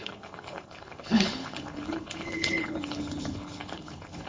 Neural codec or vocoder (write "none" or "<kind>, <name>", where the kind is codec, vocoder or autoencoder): codec, HILCodec